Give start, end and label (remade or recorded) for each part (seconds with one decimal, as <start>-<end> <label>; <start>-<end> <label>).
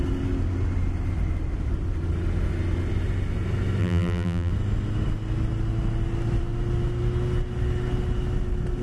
0.0-3.8 recorded; 3.8-4.5 remade; 4.5-8.8 recorded